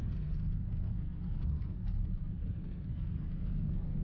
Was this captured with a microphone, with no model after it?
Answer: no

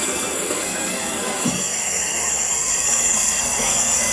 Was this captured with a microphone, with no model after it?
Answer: no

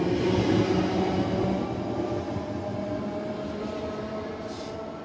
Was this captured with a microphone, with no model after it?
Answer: yes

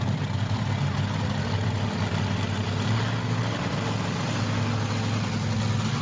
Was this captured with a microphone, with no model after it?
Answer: yes